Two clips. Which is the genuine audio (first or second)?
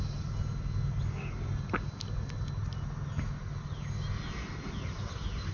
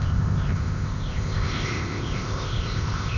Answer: first